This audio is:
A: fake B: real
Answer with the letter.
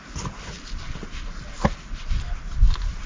B